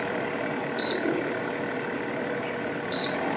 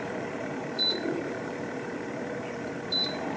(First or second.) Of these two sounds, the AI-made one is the second